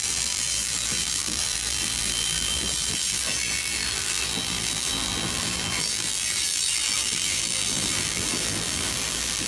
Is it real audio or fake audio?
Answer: fake